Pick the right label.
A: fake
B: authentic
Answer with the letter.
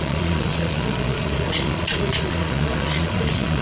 A